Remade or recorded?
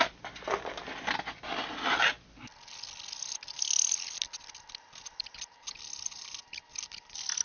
recorded